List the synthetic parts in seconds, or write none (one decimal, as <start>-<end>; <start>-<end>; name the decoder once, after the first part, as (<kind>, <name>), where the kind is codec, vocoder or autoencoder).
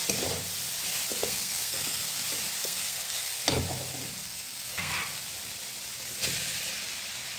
1.2-2.2 (codec, SNAC); 2.6-3.6; 4.2-4.9